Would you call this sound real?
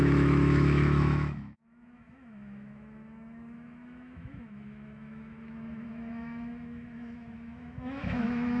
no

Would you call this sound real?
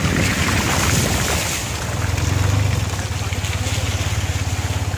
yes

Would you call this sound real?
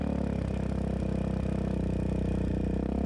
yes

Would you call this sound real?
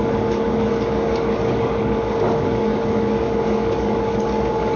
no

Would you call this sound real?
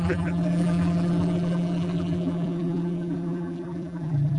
no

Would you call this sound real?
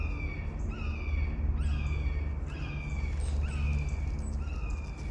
yes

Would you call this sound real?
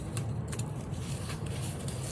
yes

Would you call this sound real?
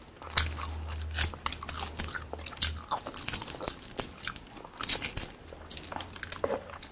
yes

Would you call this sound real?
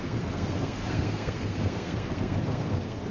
no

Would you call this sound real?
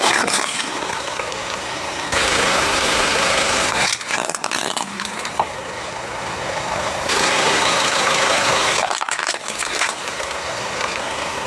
no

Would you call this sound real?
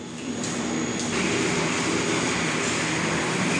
yes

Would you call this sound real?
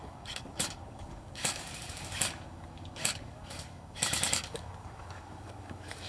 no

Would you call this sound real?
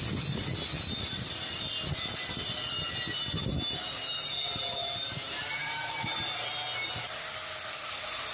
yes